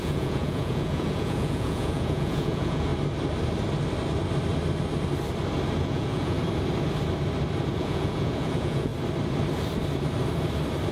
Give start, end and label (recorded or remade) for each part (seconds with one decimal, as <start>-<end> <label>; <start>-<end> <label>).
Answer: 0.0-2.9 remade; 2.9-5.8 recorded; 5.8-6.4 remade; 6.4-7.7 recorded; 7.7-8.9 remade; 8.9-10.9 recorded